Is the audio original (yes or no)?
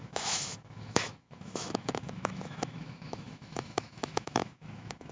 no